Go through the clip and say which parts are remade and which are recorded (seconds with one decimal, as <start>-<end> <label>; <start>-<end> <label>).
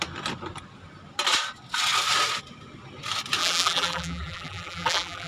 0.0-3.4 recorded; 3.4-5.3 remade